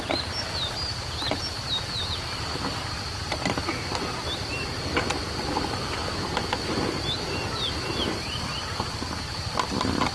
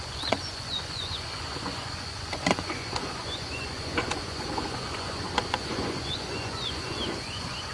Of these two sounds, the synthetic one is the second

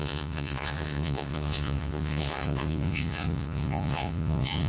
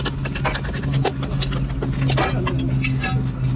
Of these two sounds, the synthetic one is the first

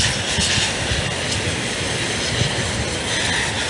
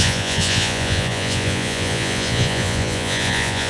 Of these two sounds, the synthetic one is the second